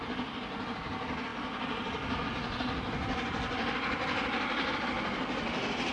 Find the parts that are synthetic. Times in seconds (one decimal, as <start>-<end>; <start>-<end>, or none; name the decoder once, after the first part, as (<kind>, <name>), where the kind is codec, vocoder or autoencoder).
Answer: none